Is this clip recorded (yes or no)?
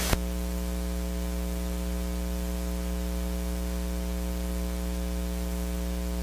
yes